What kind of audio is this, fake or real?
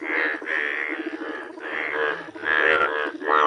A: real